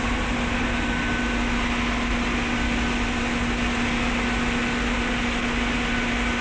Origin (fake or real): real